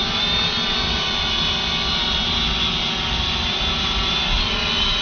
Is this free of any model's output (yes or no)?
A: yes